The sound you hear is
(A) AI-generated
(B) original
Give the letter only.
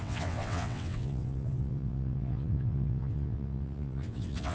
A